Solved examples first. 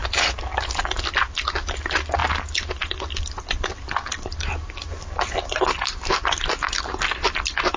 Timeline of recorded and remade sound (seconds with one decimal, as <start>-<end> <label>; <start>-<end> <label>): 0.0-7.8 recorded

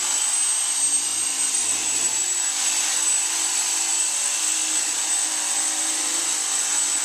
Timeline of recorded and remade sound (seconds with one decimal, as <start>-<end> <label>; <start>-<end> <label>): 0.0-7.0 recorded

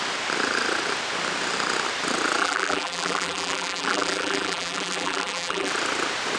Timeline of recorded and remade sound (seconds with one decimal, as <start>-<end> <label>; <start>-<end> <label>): 0.0-2.4 recorded; 2.4-5.7 remade; 5.7-6.4 recorded

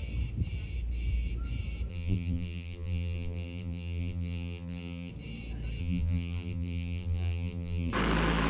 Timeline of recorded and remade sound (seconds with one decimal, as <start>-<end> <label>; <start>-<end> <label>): 0.0-1.9 recorded; 1.9-5.1 remade; 5.1-5.8 recorded; 5.8-7.9 remade; 7.9-8.5 recorded

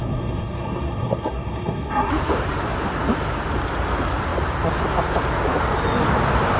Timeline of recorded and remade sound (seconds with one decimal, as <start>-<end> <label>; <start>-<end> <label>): 0.0-2.1 remade; 2.1-6.6 recorded

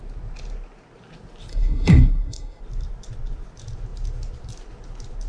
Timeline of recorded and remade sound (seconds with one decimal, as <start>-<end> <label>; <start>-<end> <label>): 0.0-1.5 recorded; 1.5-2.6 remade; 2.6-5.3 recorded

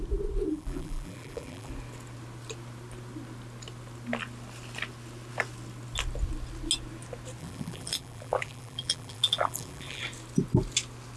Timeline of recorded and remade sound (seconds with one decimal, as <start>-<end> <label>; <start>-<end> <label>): 0.0-0.5 recorded; 0.5-1.7 remade; 1.7-7.4 recorded; 7.4-10.0 remade; 10.0-11.2 recorded